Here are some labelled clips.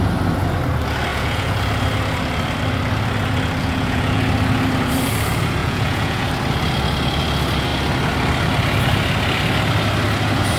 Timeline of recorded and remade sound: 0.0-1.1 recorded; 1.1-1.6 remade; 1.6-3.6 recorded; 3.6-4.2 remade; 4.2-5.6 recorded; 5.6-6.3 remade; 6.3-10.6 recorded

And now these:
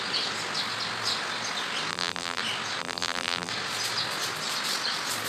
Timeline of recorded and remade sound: 0.0-1.9 recorded; 1.9-2.4 remade; 2.4-2.8 recorded; 2.8-3.5 remade; 3.5-5.3 recorded

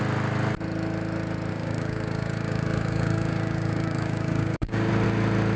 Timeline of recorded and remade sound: 0.0-1.5 recorded; 1.5-4.9 remade; 4.9-5.6 recorded

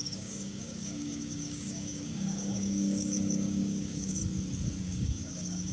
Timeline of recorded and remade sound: 0.0-4.2 remade; 4.2-4.8 recorded; 4.8-5.7 remade

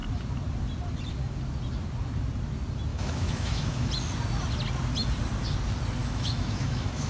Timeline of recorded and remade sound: 0.0-2.9 recorded; 2.9-3.9 remade; 3.9-6.0 recorded; 6.0-7.1 remade

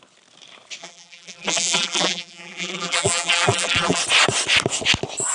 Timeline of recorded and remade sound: 0.0-0.8 recorded; 0.8-4.0 remade; 4.0-5.3 recorded

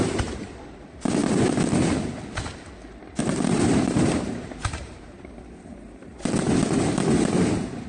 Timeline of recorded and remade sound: 0.0-1.2 remade; 1.2-3.2 recorded; 3.2-6.1 remade; 6.1-7.9 recorded

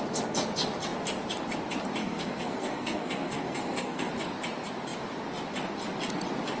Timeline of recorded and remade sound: 0.0-2.0 recorded; 2.0-4.1 remade; 4.1-6.6 recorded